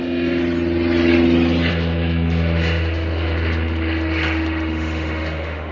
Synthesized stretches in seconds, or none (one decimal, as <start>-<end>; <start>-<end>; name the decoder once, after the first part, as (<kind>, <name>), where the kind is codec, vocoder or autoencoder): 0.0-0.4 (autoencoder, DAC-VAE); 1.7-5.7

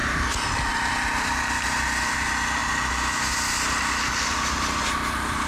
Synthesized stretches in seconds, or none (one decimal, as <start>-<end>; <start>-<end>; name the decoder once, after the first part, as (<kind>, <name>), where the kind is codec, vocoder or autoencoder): none

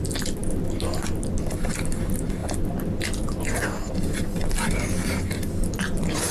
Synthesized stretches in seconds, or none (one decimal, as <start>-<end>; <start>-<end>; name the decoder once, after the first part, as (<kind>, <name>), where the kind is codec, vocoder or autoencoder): none